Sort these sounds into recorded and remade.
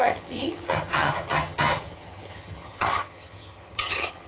remade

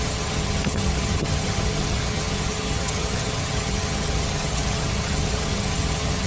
remade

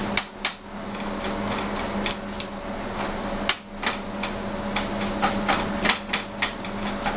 recorded